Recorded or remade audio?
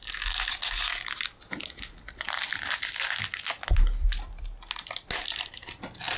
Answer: recorded